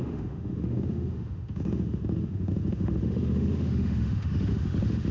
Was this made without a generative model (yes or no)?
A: no